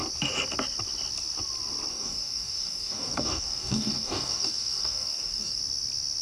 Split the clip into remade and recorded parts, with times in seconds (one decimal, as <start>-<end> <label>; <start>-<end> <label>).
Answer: 0.0-1.9 recorded; 1.9-5.6 remade; 5.6-6.2 recorded